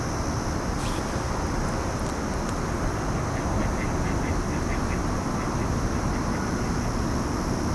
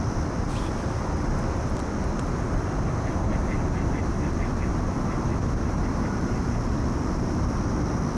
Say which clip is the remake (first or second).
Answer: second